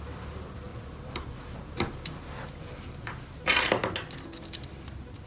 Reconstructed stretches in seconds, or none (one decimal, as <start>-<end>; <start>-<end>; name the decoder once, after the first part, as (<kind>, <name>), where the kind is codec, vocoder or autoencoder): 0.7-2.6 (vocoder, BigVGAN v2)